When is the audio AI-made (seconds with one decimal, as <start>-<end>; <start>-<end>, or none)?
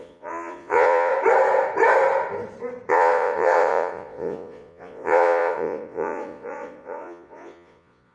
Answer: 0.0-1.1; 2.9-8.1